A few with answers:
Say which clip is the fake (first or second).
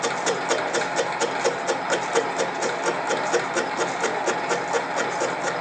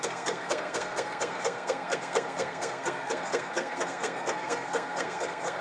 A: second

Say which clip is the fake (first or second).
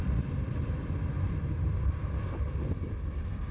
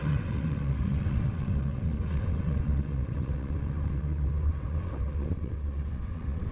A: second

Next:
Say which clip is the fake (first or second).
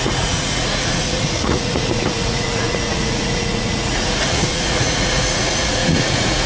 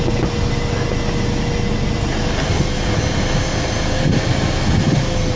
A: first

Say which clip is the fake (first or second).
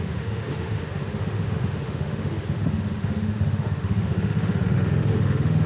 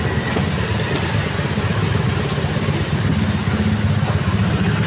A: first